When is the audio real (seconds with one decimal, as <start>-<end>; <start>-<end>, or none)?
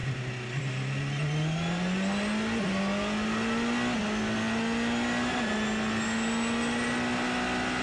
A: 0.0-7.8